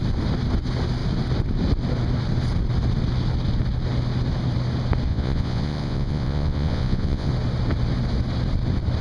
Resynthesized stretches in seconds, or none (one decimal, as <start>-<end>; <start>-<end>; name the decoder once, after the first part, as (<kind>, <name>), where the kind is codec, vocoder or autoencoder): 5.1-7.3 (vocoder, Vocos)